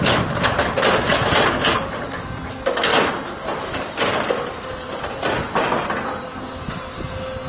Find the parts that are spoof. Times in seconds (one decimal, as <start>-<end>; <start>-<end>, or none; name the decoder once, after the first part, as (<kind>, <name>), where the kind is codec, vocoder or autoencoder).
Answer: none